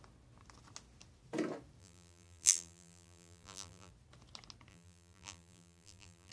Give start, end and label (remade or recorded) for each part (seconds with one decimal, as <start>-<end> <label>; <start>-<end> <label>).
0.0-1.8 recorded; 1.8-3.9 remade; 3.9-4.7 recorded; 4.7-6.3 remade